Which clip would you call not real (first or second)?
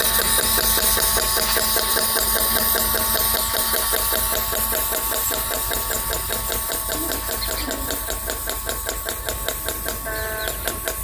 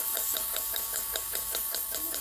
second